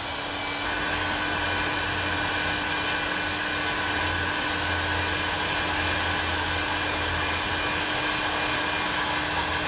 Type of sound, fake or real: real